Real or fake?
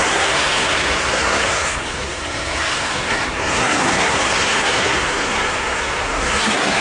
fake